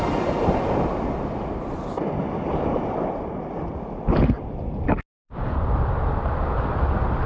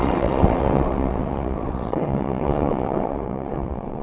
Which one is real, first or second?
first